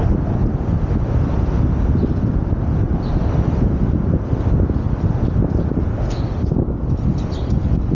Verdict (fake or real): real